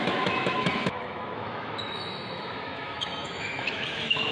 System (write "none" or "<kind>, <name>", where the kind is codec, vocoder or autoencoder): autoencoder, DAC-VAE